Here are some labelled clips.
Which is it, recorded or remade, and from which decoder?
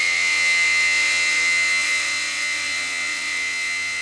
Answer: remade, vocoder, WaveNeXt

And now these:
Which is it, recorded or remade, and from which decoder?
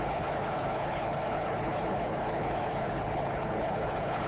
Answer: remade, codec, HILCodec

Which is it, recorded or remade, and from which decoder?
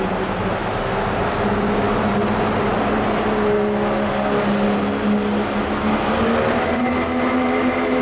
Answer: recorded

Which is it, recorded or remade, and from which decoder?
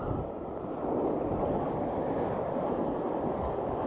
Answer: recorded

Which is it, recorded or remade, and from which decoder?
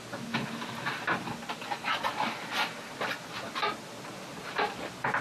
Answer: recorded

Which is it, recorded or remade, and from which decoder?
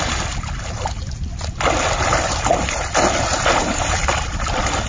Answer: recorded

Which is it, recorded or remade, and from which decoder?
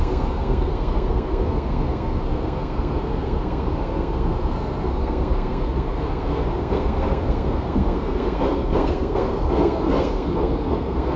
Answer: remade, codec, SNAC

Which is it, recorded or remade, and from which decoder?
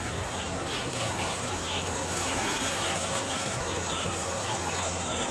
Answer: remade, codec, SNAC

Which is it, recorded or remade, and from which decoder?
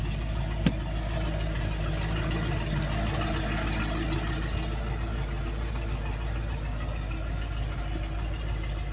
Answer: recorded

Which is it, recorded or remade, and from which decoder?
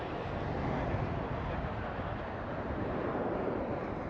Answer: recorded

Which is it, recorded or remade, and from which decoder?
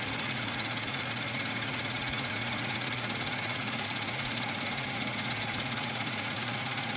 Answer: remade, vocoder, Vocos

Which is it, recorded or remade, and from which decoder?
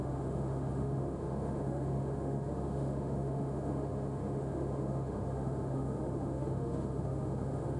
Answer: remade, autoencoder, DAC-VAE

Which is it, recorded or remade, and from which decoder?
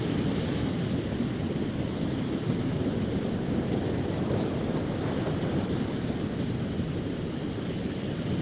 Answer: remade, vocoder, BigVGAN v2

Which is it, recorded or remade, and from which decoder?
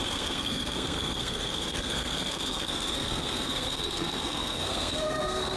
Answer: remade, codec, SNAC